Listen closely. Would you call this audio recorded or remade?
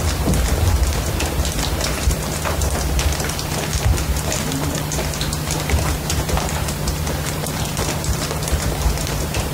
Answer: remade